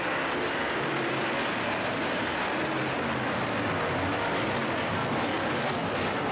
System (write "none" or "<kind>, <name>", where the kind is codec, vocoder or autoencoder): none